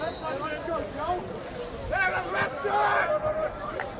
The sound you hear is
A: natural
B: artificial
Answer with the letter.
A